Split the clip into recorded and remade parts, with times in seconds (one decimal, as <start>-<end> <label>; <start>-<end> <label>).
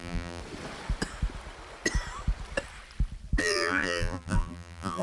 0.0-0.4 remade; 0.4-3.4 recorded; 3.4-5.0 remade